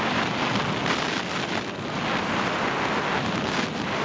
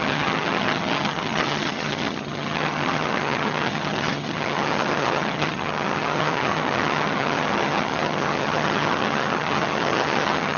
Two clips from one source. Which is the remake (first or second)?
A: second